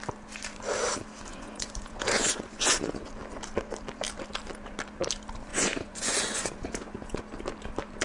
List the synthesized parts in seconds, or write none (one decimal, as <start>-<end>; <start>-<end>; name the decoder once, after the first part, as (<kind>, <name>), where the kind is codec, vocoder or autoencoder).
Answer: 1.3-2.9 (vocoder, Vocos); 5.5-7.2